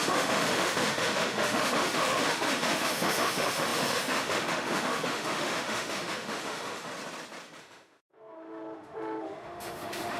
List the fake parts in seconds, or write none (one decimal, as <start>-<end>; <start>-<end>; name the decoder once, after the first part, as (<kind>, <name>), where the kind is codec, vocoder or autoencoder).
0.0-6.9 (autoencoder, DAC-VAE); 7.6-10.2